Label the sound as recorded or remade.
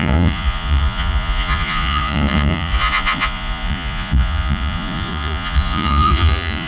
remade